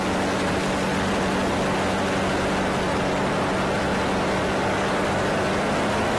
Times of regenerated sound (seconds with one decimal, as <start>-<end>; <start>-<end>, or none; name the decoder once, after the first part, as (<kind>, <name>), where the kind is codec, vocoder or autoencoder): none

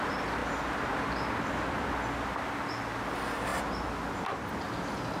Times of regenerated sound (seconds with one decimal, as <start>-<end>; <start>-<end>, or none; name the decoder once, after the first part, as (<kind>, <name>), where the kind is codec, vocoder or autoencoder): none

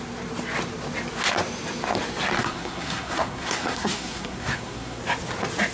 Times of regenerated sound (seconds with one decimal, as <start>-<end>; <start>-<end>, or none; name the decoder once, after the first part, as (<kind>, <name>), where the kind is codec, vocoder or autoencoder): 2.4-5.0 (codec, SNAC)

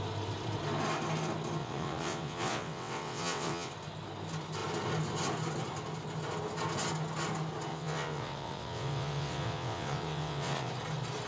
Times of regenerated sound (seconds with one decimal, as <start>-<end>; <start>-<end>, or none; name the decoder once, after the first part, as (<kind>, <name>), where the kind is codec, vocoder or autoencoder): 1.6-3.7 (vocoder, WaveNeXt); 7.7-10.7

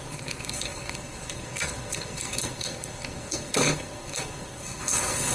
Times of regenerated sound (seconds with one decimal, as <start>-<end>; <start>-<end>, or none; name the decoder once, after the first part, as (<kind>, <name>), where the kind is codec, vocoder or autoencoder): 0.0-5.3 (codec, SNAC)

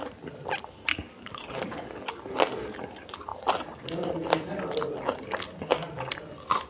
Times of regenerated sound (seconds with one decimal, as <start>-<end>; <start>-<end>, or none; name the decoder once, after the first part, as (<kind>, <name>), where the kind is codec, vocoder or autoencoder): 0.9-2.1 (codec, DAC)